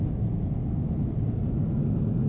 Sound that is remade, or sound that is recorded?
recorded